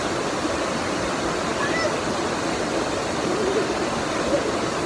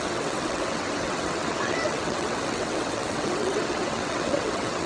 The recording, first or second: first